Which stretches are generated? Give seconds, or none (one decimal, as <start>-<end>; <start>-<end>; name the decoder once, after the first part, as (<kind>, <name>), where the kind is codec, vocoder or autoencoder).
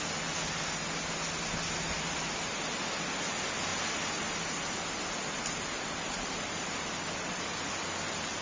none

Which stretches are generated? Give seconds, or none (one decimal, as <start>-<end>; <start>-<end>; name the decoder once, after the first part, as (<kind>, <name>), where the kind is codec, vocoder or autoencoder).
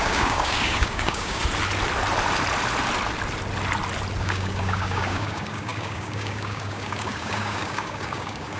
0.0-1.4 (codec, DAC); 4.2-8.6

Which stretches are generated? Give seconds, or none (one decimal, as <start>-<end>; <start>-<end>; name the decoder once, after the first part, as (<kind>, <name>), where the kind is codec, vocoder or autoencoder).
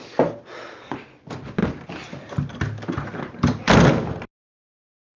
none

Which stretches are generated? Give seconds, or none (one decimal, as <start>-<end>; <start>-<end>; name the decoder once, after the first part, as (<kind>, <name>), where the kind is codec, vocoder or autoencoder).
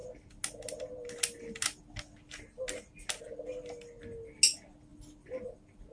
none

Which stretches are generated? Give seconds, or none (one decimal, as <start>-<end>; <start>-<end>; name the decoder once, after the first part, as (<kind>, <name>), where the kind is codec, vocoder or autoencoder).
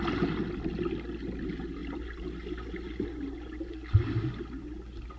none